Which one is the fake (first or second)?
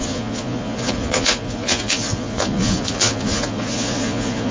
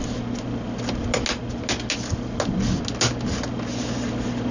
first